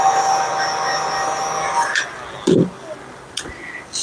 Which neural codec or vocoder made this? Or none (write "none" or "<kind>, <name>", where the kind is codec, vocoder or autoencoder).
none